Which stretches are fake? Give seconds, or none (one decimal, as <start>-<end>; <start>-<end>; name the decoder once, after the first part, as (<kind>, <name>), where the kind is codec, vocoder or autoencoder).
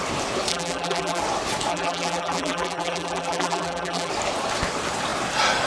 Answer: 0.5-1.2 (vocoder, BigVGAN v2); 1.7-4.1